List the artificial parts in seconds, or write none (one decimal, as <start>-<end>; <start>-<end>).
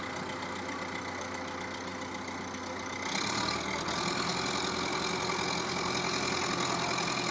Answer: none